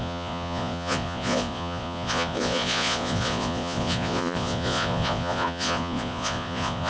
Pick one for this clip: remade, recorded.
remade